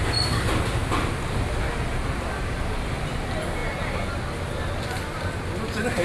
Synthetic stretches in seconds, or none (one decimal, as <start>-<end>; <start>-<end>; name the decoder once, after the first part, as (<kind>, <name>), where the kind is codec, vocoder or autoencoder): none